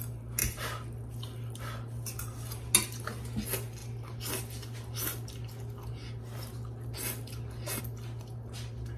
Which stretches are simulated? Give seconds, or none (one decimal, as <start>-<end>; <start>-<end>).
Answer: none